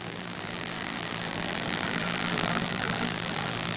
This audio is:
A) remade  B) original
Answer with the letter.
A